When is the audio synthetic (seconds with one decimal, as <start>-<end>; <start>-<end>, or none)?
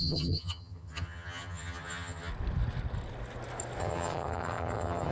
0.0-2.3; 3.8-5.1